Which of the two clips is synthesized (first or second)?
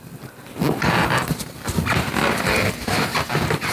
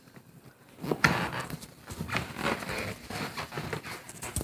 second